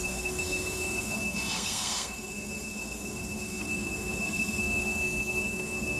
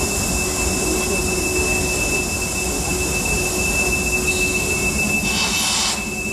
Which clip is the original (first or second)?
second